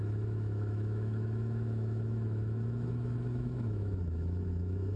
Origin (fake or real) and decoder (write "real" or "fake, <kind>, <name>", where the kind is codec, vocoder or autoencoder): fake, autoencoder, DAC-VAE